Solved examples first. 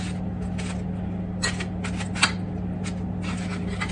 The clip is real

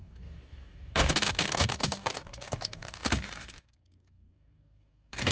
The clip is fake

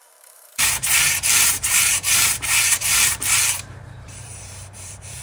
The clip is fake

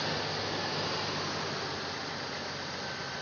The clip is real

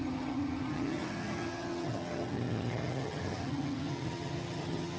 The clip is fake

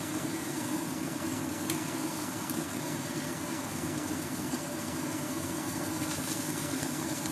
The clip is fake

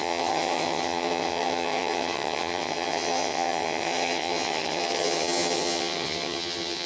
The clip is fake